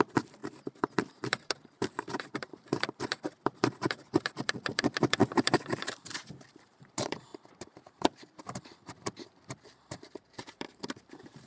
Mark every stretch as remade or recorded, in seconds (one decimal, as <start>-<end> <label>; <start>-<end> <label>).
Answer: 0.0-7.3 remade; 7.3-8.0 recorded; 8.0-11.5 remade